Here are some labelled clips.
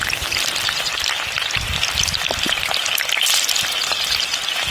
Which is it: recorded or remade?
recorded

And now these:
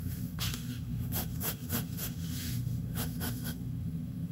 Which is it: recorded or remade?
remade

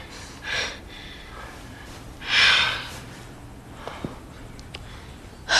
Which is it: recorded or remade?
remade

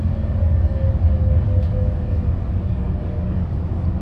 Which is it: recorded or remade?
remade